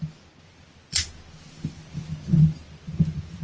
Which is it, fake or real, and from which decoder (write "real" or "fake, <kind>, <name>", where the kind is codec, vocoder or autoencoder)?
real